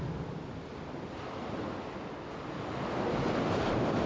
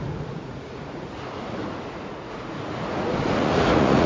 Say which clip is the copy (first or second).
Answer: second